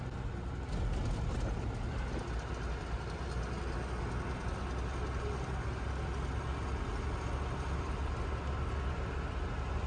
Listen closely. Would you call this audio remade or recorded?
recorded